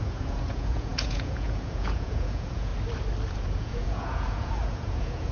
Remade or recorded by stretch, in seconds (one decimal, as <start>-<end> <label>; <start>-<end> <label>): 0.0-2.7 remade; 2.7-3.3 recorded; 3.3-5.3 remade